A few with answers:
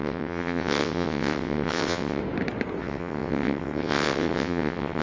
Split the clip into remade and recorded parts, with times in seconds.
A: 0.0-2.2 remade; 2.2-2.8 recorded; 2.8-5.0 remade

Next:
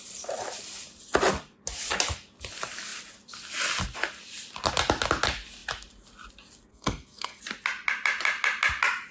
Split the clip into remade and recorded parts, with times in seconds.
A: 0.0-6.7 recorded; 6.7-7.4 remade; 7.4-9.1 recorded

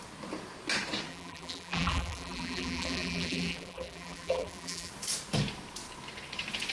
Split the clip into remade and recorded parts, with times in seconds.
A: 0.0-1.1 recorded; 1.1-4.9 remade; 4.9-6.7 recorded

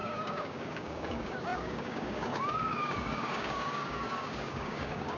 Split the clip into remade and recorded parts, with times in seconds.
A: 0.0-5.2 remade

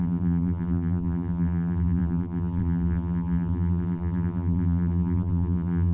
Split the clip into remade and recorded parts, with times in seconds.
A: 0.0-5.9 remade

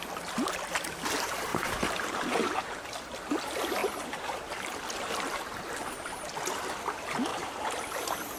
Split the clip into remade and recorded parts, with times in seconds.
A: 0.0-1.5 recorded; 1.5-2.8 remade; 2.8-3.8 recorded; 3.8-6.2 remade; 6.2-7.3 recorded; 7.3-8.4 remade

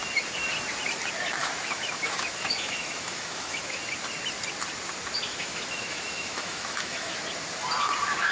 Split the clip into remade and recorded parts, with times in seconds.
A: 0.0-1.4 recorded; 1.4-3.8 remade; 3.8-5.3 recorded; 5.3-7.2 remade; 7.2-8.3 recorded